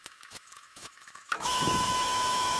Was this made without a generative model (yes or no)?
no